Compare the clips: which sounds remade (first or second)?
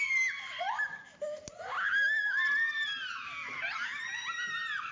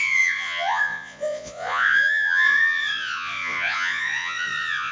second